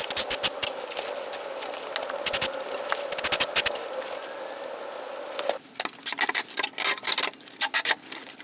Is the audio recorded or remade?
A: recorded